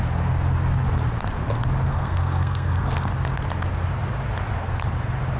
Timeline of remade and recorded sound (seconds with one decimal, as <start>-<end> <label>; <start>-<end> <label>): 0.0-1.9 recorded; 1.9-3.1 remade; 3.1-5.4 recorded